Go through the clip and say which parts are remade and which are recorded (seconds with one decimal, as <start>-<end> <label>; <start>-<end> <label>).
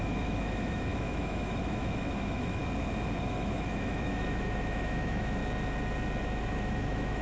0.0-2.6 remade; 2.6-3.2 recorded; 3.2-5.4 remade; 5.4-6.2 recorded; 6.2-7.2 remade